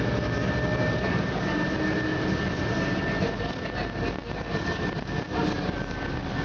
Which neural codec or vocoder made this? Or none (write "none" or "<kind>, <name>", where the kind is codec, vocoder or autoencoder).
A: none